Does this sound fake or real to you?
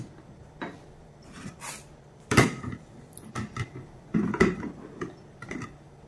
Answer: fake